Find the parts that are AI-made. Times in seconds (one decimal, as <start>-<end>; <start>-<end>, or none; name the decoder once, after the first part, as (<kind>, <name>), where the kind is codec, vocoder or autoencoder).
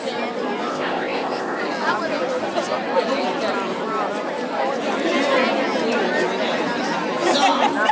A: 0.7-1.6 (codec, ZipCodec)